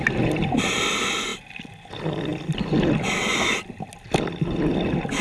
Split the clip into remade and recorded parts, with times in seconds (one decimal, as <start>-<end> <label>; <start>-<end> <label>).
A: 0.0-5.2 recorded